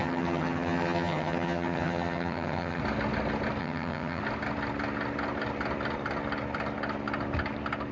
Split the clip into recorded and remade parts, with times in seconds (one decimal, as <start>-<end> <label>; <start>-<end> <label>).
0.0-2.8 remade; 2.8-3.6 recorded; 3.6-4.2 remade; 4.2-7.9 recorded